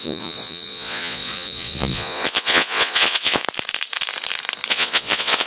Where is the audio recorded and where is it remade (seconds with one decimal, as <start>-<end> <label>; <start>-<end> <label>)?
0.0-3.4 remade; 3.4-4.7 recorded; 4.7-5.5 remade